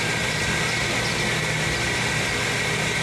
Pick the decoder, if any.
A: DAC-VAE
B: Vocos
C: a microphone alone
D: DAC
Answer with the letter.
C